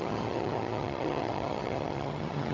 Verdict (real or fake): fake